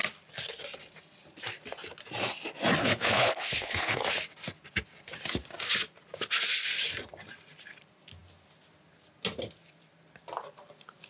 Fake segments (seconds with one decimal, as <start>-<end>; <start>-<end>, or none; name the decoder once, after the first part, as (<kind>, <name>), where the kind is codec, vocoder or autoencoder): 2.8-4.0 (codec, HILCodec)